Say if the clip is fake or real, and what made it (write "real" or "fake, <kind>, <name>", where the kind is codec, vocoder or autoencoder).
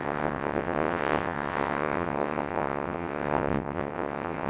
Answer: fake, vocoder, WaveNeXt